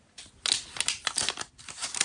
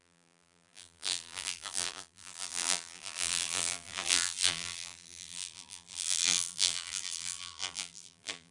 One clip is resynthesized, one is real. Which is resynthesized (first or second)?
second